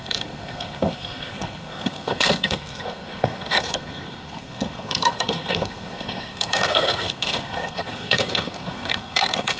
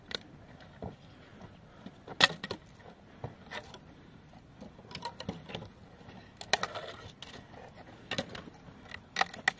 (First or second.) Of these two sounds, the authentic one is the second